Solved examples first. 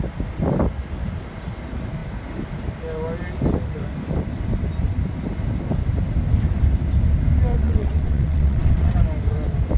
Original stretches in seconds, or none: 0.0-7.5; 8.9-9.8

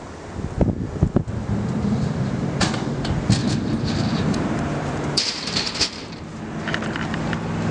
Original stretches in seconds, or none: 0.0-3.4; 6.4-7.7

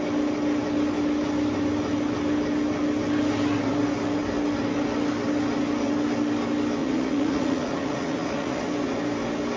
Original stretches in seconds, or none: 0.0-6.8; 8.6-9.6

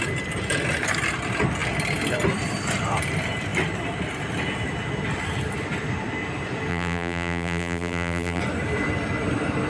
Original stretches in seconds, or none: 0.0-6.7; 8.4-9.7

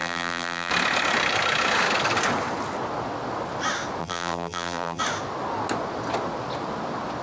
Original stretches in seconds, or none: 0.7-4.0; 5.0-7.2

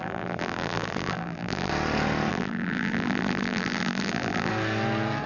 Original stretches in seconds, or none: 1.7-2.3; 4.5-5.3

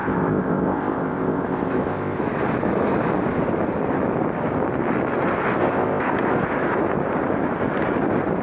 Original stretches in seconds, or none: 2.2-5.6; 6.1-8.4